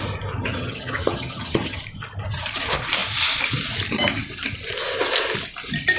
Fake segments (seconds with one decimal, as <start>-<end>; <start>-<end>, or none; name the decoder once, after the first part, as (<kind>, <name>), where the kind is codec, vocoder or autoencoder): 0.5-1.8 (vocoder, HiFi-GAN)